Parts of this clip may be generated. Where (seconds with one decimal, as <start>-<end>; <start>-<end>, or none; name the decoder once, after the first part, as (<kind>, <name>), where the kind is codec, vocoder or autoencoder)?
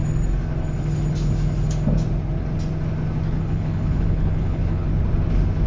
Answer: 3.4-4.9 (codec, HILCodec)